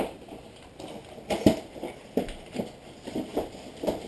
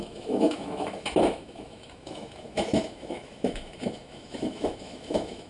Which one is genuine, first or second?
first